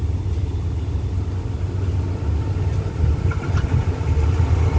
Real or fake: real